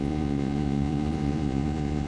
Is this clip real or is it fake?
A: fake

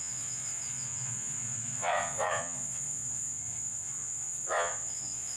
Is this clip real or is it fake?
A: fake